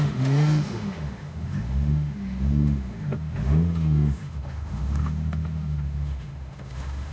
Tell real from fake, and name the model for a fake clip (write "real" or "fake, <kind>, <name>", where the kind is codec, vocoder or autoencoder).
fake, autoencoder, DAC-VAE